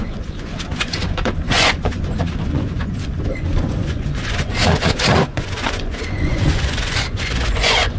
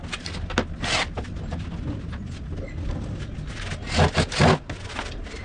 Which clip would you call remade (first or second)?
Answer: first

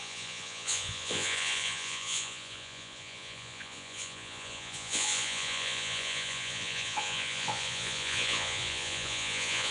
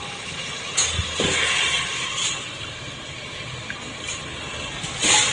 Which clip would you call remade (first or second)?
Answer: first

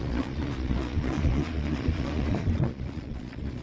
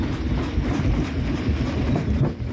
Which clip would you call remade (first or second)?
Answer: first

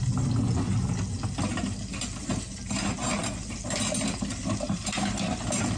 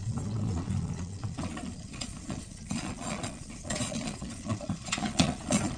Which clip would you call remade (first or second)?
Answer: second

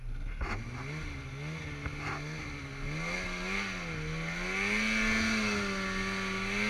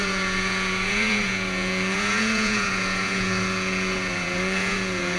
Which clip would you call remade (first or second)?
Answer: second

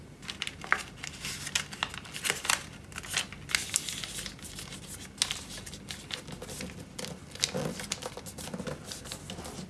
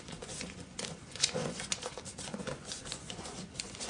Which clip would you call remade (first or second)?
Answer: second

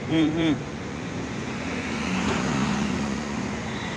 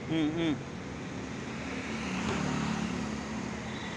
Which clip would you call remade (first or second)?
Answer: first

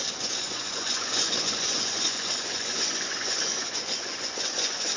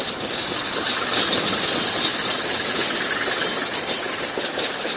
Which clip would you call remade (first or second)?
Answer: first